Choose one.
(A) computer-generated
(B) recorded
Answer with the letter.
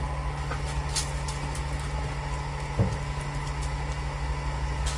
B